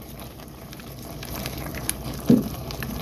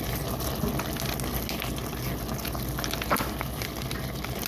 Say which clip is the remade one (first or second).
first